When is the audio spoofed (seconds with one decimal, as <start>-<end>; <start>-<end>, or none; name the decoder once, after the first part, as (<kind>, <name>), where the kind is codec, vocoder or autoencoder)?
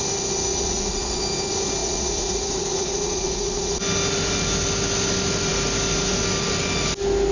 0.5-1.2 (vocoder, Vocos); 1.8-3.8